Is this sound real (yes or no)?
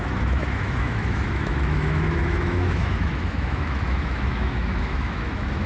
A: no